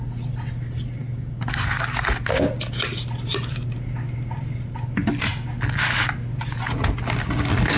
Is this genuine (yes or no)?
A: yes